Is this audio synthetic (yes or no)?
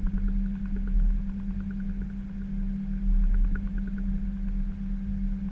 no